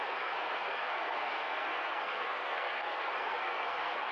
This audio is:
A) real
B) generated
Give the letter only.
B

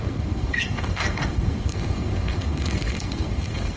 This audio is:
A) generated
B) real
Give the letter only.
A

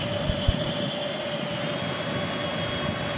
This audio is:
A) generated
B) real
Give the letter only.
B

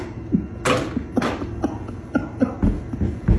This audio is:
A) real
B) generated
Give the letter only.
A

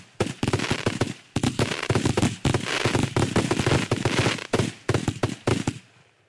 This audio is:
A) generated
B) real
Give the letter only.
B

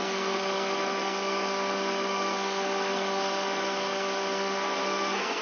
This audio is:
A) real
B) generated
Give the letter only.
B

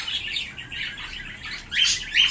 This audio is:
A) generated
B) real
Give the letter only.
B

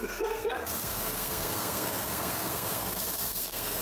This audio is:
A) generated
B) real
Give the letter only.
A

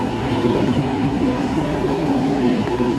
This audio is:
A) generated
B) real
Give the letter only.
A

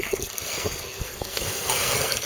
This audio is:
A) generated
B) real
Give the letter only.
A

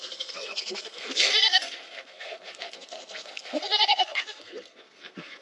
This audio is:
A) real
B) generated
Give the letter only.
B